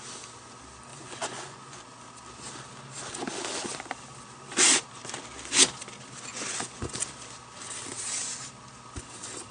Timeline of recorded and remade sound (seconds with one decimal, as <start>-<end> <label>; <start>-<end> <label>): 0.0-0.9 recorded; 0.9-1.8 remade; 1.8-6.3 recorded; 6.3-7.0 remade; 7.0-9.5 recorded